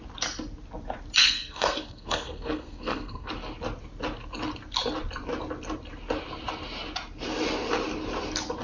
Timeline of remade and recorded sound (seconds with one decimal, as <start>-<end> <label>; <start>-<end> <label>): 0.0-1.2 recorded; 1.2-3.3 remade; 3.3-8.6 recorded